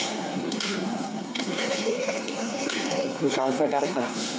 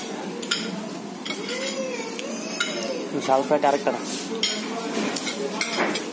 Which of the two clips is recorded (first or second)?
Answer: second